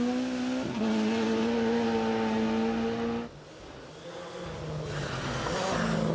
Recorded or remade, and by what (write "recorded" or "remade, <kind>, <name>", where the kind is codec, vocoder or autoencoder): recorded